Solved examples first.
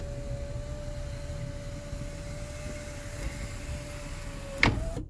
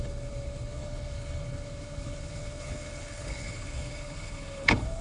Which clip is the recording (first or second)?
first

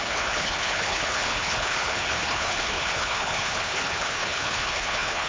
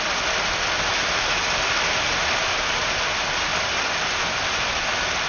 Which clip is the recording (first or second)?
second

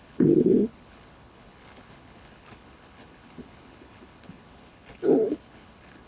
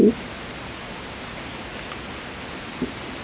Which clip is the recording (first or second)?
second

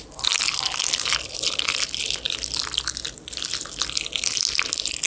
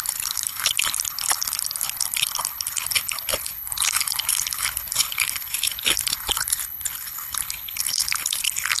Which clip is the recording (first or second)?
first